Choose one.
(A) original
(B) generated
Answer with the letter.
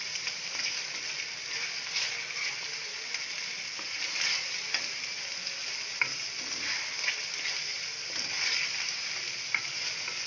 A